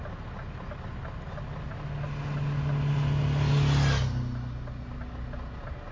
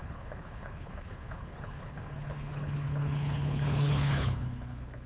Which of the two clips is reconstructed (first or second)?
second